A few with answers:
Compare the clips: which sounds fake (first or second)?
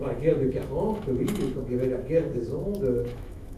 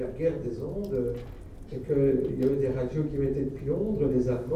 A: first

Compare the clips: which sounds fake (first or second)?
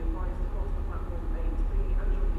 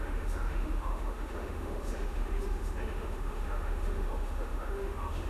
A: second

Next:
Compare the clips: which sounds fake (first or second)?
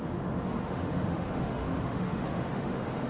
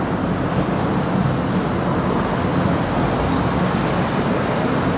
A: first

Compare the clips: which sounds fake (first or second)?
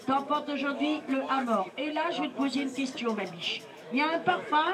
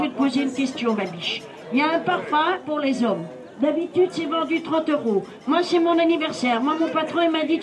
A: first